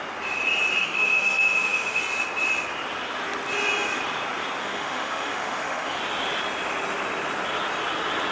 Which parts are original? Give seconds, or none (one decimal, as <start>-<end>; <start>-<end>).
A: 0.0-0.8; 2.0-4.6; 6.0-8.3